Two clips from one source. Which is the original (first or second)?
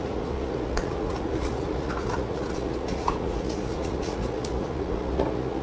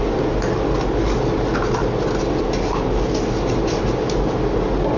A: second